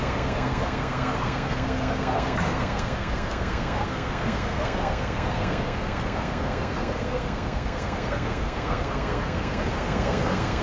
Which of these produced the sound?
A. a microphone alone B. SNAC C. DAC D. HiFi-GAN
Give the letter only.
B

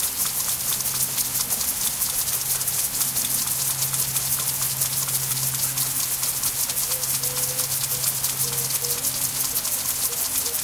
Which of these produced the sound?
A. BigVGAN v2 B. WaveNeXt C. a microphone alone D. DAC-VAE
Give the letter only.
C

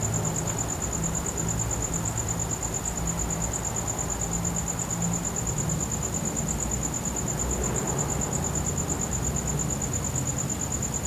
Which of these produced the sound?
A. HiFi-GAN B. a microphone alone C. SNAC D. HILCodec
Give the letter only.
B